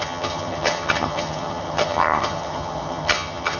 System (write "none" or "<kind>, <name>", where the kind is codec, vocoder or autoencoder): vocoder, HiFi-GAN